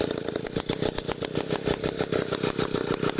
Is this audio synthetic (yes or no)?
no